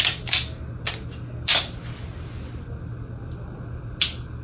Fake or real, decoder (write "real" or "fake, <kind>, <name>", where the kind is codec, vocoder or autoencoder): real